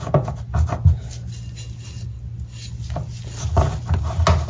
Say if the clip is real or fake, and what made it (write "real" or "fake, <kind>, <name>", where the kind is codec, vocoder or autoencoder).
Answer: real